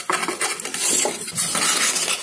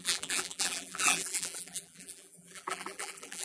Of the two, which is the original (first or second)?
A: first